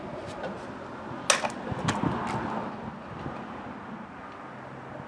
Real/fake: real